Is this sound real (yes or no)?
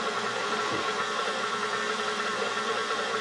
yes